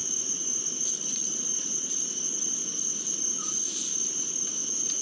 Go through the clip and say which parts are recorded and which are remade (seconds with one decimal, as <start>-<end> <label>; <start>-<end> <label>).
0.0-1.5 remade; 1.5-3.9 recorded; 3.9-5.0 remade